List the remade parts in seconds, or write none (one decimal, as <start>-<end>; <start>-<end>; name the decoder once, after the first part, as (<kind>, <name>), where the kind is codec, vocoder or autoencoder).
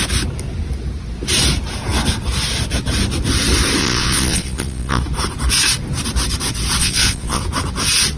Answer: 3.8-5.0 (vocoder, Vocos); 6.8-7.4